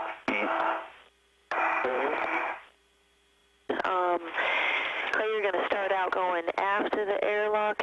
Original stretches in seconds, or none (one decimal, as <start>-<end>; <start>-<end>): 0.0-1.4; 2.8-7.8

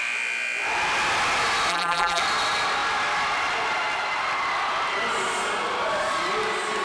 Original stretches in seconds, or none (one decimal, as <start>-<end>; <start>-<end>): 0.0-1.7; 2.2-6.8

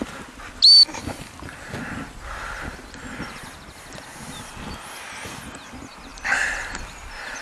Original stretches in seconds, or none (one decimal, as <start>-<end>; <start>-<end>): 0.0-7.4

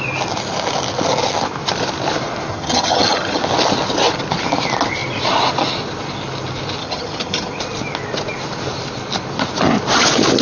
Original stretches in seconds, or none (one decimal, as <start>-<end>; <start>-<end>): 0.0-2.5; 3.4-6.8; 7.6-10.4

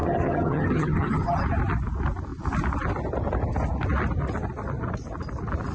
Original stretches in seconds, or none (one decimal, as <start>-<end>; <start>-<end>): 1.4-5.7

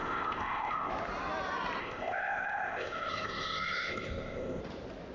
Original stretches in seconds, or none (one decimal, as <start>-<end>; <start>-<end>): 0.9-1.8; 4.6-5.1